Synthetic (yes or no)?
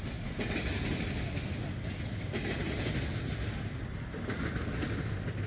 no